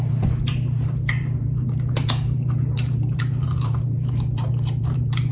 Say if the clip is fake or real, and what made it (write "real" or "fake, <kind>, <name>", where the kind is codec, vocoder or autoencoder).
fake, vocoder, BigVGAN v2